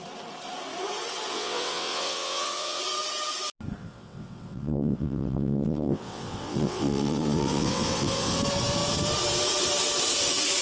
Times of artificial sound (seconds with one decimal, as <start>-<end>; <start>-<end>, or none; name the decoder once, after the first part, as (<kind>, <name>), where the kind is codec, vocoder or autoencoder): 1.3-2.8 (vocoder, WaveNeXt); 3.8-8.4